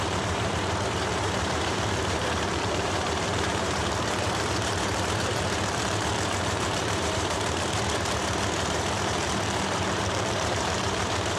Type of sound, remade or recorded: remade